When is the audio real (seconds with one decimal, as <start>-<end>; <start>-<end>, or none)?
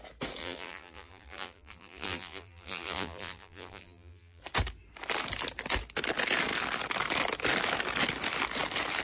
0.0-0.4; 4.4-9.0